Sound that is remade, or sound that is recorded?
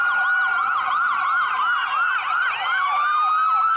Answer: recorded